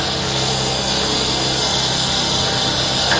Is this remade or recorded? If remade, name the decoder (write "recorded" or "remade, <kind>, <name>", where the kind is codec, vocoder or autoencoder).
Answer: remade, codec, SNAC